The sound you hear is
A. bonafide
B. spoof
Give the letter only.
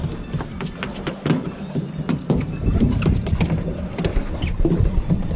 A